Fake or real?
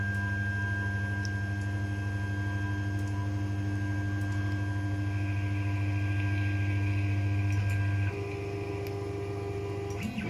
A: real